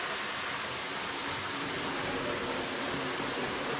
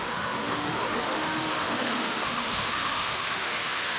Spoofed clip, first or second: second